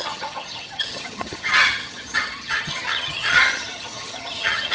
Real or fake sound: fake